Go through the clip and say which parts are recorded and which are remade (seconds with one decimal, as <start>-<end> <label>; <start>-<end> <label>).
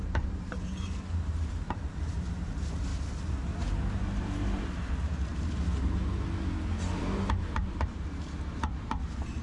0.0-2.9 remade; 2.9-3.9 recorded; 3.9-6.0 remade; 6.0-7.0 recorded; 7.0-9.4 remade